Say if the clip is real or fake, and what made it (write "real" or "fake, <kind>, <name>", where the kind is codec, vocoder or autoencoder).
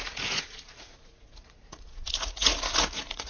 fake, vocoder, Vocos